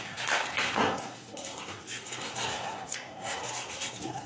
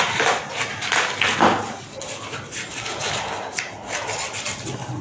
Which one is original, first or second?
second